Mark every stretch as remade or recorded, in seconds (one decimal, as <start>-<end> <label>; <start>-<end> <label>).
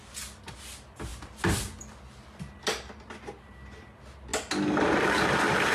0.0-5.7 recorded